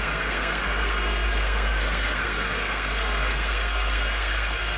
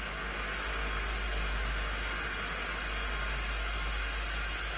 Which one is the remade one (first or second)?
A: first